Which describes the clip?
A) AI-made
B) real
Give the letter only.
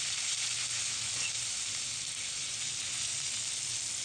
B